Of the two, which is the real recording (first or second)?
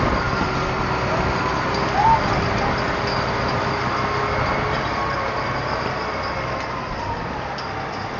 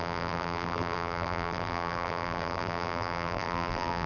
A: first